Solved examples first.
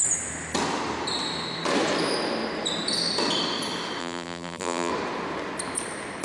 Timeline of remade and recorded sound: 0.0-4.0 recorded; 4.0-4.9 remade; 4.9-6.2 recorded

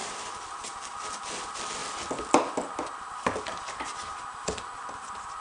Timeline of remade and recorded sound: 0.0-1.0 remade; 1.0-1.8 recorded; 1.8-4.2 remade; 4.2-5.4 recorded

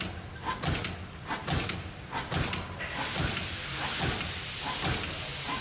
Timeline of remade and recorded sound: 0.0-5.6 recorded

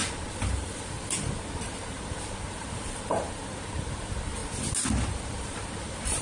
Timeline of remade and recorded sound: 0.0-4.4 remade; 4.4-5.1 recorded; 5.1-6.2 remade

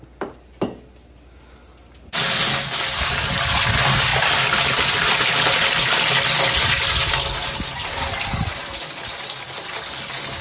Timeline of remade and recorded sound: 0.0-4.1 recorded; 4.1-6.5 remade; 6.5-10.4 recorded